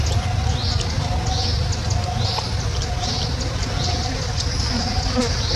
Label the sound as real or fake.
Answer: real